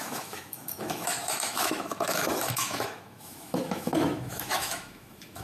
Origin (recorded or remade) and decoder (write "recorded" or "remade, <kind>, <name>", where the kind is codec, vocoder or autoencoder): remade, autoencoder, DAC-VAE